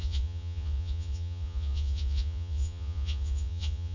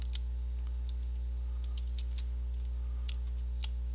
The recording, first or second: second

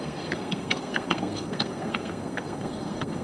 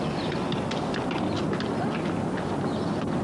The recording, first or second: second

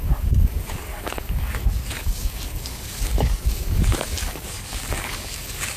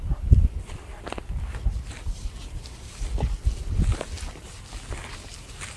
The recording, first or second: second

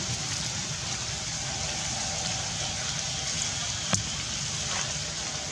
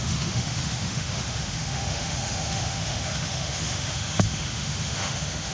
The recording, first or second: first